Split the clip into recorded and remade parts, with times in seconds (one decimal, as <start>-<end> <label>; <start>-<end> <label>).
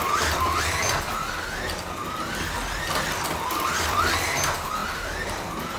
0.0-5.8 recorded